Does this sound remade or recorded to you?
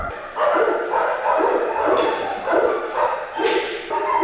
recorded